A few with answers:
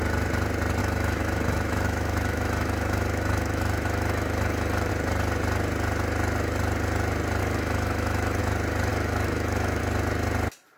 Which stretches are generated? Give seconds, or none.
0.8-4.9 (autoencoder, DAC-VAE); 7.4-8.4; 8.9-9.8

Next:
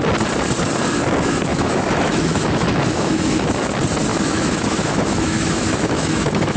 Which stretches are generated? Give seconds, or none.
1.5-3.5 (autoencoder, DAC-VAE); 4.1-6.6